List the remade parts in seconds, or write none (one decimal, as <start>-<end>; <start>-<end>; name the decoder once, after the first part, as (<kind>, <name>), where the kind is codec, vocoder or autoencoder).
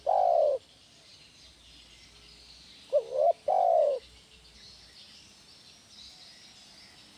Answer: none